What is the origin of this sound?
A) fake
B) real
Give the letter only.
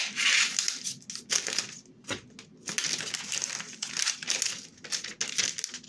B